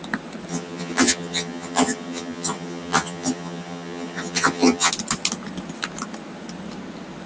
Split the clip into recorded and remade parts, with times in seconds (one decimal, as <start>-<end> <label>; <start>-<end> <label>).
0.0-0.5 recorded; 0.5-4.9 remade; 4.9-7.3 recorded